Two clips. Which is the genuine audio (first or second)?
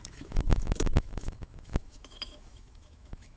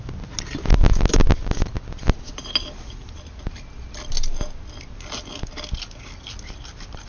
second